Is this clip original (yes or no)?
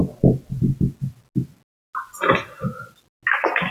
yes